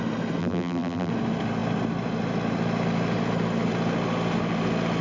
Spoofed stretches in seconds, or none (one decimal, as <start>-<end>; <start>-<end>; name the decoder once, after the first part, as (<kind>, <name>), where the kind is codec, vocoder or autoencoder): 0.4-1.1 (vocoder, BigVGAN v2)